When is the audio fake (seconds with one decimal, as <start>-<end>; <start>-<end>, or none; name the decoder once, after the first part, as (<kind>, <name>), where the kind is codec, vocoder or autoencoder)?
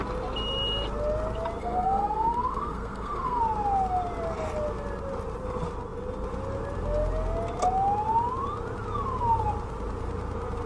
1.6-3.4 (codec, SNAC)